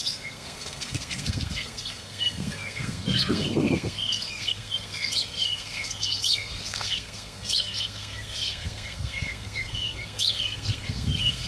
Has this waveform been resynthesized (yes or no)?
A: yes